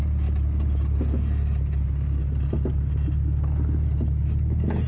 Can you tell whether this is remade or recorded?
recorded